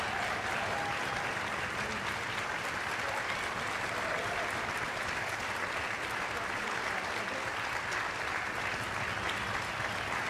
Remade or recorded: recorded